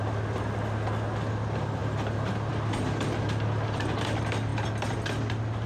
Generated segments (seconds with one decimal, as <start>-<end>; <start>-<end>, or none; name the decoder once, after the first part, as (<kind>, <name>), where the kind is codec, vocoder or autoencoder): none